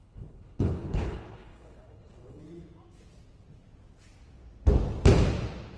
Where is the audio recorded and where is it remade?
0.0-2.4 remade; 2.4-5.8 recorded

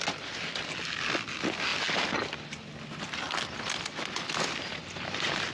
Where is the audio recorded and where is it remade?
0.0-5.5 recorded

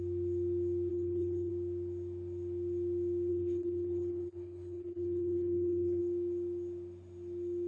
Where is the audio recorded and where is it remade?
0.0-0.9 recorded; 0.9-1.5 remade; 1.5-3.3 recorded; 3.3-6.0 remade; 6.0-7.7 recorded

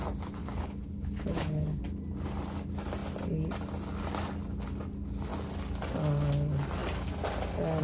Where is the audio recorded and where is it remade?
0.0-0.4 recorded; 0.4-1.8 remade; 1.8-7.8 recorded

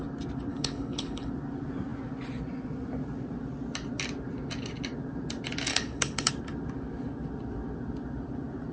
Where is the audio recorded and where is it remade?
0.0-0.5 recorded; 0.5-1.3 remade; 1.3-5.7 recorded; 5.7-6.3 remade; 6.3-8.7 recorded

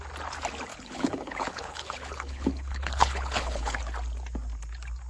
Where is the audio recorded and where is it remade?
0.0-0.7 recorded; 0.7-3.8 remade; 3.8-5.1 recorded

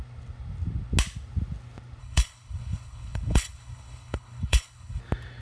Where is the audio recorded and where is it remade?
0.0-2.0 recorded; 2.0-5.0 remade; 5.0-5.4 recorded